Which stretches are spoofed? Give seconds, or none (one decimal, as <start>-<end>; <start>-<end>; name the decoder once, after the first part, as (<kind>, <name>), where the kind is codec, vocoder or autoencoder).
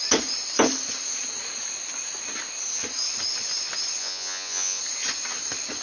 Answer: 4.0-4.8 (vocoder, Vocos)